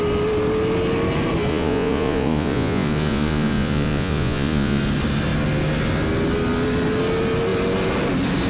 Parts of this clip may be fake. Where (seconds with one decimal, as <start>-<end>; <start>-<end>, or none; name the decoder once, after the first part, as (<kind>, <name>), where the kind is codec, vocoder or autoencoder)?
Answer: 1.5-4.8 (vocoder, Vocos)

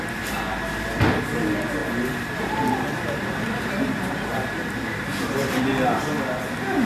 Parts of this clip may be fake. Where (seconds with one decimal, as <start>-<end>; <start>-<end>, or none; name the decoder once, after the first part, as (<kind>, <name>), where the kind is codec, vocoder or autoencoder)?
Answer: 1.8-5.6 (vocoder, BigVGAN v2)

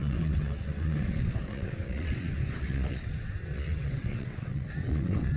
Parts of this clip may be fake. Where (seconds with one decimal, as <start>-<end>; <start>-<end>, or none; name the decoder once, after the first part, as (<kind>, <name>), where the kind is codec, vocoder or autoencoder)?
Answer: 0.0-5.4 (vocoder, WaveNeXt)